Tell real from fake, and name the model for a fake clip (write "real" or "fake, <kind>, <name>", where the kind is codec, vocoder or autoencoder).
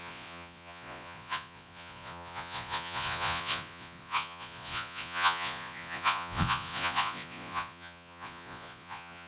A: fake, vocoder, Vocos